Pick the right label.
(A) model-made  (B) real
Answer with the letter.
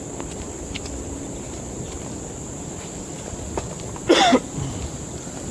B